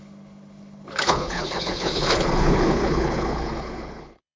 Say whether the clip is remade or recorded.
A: remade